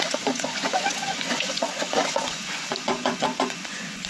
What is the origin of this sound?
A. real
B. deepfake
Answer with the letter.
B